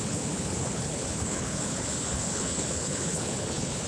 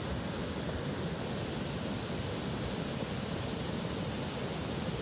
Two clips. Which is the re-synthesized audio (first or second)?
first